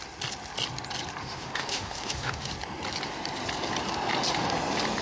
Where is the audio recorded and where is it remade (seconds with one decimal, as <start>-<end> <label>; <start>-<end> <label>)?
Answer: 0.0-1.2 recorded; 1.2-2.5 remade; 2.5-5.0 recorded